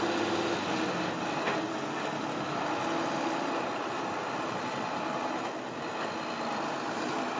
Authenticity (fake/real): real